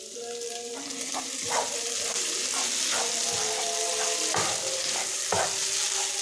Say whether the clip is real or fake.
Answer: real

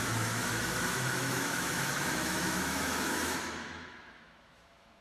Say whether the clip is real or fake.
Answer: fake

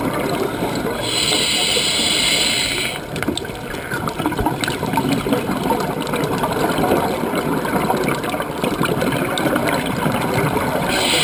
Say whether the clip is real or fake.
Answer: real